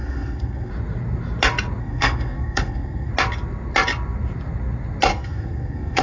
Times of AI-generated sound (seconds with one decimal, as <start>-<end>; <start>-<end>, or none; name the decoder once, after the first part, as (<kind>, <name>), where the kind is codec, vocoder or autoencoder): 0.0-0.7 (codec, SNAC); 1.8-3.1; 5.1-6.0